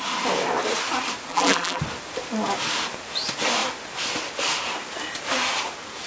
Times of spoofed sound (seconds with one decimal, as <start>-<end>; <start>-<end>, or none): 1.3-1.8